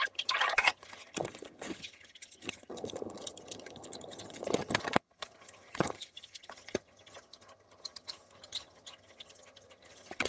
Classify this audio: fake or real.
fake